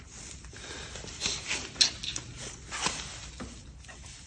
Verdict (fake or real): real